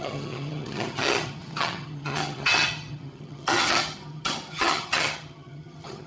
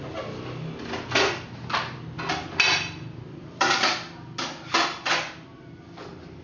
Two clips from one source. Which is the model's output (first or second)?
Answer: first